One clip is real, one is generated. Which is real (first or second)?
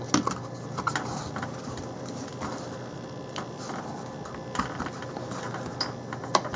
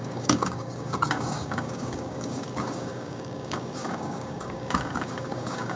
first